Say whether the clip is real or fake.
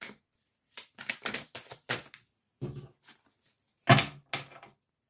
real